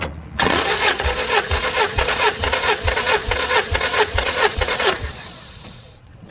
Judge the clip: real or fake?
fake